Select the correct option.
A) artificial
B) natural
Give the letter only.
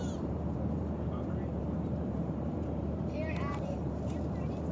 A